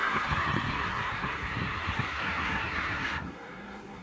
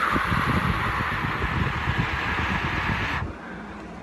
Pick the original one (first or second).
second